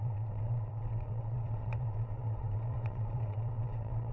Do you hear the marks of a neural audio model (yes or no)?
yes